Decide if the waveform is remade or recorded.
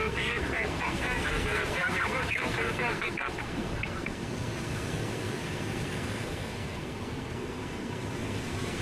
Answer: remade